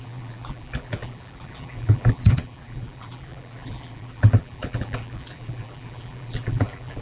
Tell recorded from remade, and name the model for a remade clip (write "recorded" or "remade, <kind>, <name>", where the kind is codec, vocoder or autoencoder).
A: remade, vocoder, BigVGAN v2